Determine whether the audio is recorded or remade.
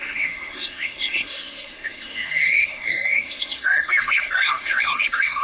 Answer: remade